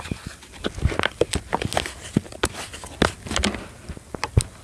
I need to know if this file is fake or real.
real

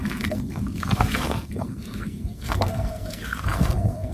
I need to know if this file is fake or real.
fake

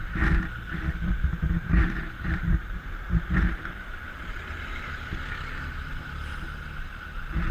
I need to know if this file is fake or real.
real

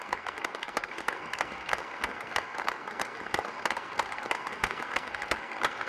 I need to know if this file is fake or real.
fake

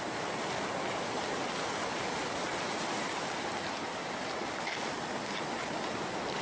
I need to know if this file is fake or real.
real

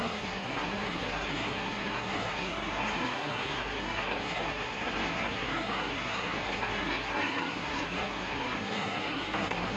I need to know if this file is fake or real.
fake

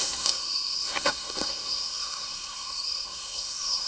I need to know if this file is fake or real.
fake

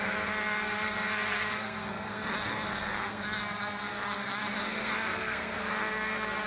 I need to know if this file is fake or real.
fake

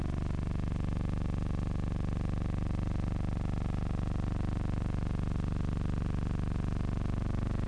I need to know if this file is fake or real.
real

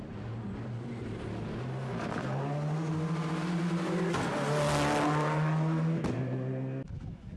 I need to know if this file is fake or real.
real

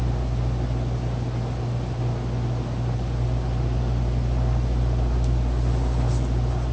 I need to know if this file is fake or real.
real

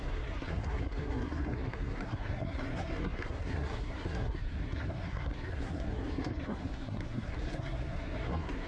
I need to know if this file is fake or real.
fake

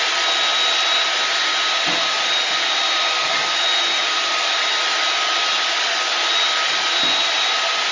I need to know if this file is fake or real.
real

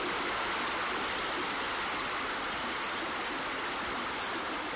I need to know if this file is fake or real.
real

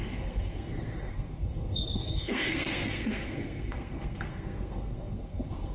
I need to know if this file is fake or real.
fake